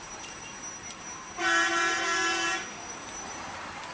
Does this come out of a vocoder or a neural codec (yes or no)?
yes